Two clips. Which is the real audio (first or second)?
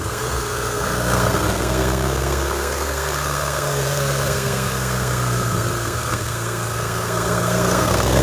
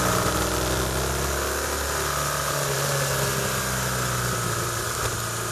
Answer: second